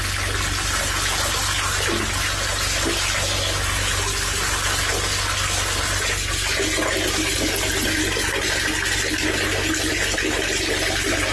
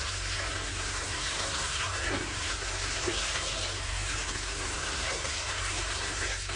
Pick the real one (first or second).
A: first